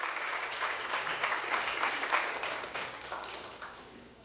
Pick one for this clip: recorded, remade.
remade